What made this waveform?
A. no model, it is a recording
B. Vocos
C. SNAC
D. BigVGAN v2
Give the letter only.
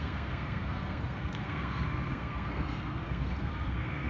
C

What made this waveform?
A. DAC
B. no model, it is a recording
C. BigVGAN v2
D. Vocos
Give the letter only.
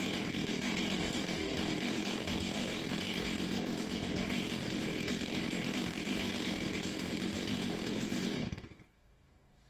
A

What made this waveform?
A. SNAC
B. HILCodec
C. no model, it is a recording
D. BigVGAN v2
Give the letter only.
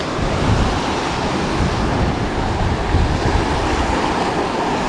D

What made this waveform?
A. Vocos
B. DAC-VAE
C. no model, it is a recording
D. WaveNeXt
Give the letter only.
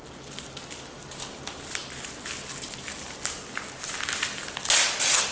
C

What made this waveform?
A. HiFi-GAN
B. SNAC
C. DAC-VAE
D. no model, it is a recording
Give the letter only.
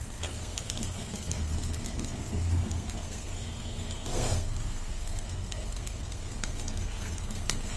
B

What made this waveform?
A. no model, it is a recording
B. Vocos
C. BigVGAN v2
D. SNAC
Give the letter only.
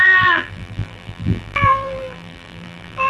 C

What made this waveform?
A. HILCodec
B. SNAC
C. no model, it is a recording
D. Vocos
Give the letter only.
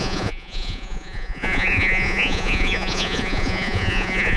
D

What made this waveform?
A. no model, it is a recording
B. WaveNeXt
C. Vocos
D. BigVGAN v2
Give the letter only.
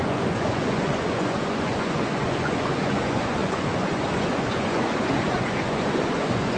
C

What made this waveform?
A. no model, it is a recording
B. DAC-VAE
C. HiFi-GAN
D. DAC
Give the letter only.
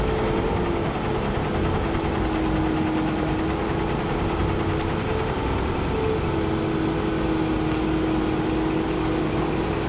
A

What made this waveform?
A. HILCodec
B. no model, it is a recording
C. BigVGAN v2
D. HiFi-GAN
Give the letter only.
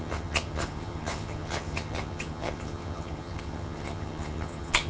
D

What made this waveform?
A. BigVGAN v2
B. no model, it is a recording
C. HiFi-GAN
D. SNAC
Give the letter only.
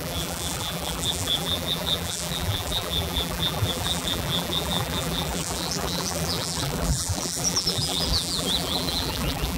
A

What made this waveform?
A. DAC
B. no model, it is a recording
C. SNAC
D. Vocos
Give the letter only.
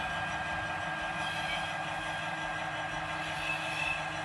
B